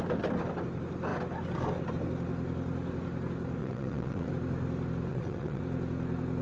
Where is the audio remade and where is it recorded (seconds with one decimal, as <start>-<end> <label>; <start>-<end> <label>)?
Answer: 0.0-3.6 recorded; 3.6-4.3 remade; 4.3-5.1 recorded; 5.1-5.6 remade; 5.6-6.4 recorded